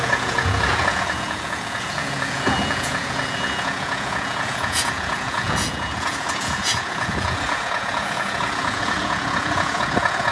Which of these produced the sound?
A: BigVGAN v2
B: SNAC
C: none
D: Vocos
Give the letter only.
D